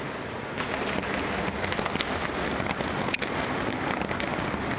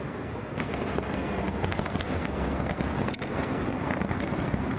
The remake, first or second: second